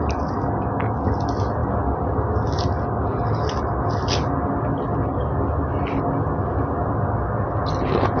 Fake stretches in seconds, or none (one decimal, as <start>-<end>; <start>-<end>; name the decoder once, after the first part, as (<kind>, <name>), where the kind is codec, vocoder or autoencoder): none